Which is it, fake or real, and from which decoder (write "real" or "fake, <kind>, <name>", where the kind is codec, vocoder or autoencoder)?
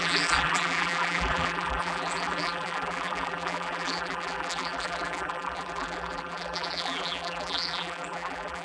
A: fake, vocoder, BigVGAN v2